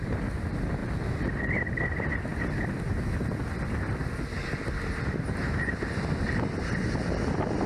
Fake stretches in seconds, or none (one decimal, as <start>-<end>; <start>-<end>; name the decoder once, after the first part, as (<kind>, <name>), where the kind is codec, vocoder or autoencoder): none